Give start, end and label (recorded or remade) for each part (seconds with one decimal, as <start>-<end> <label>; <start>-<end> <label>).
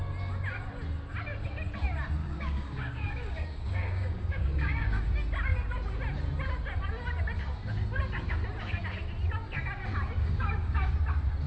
0.0-2.2 recorded; 2.2-5.0 remade; 5.0-10.2 recorded; 10.2-10.9 remade; 10.9-11.5 recorded